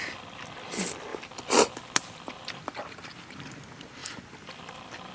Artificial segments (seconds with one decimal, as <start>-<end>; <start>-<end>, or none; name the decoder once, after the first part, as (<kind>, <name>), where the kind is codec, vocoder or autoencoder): 1.1-2.6 (vocoder, BigVGAN v2); 4.0-5.1